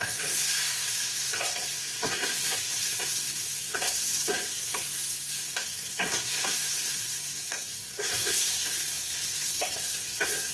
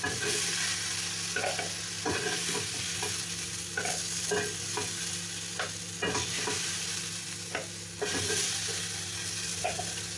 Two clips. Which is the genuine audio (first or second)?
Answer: second